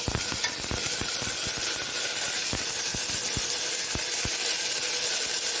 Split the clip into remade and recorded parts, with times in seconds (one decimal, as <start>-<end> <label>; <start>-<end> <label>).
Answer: 0.0-5.6 recorded